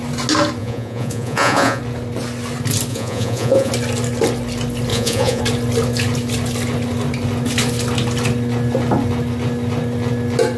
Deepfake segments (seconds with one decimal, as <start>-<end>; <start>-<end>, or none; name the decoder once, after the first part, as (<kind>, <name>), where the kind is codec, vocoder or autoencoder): 0.6-1.8 (vocoder, Vocos); 2.9-3.7; 4.9-5.4